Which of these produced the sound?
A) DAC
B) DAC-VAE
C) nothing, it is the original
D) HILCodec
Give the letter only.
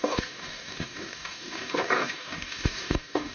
A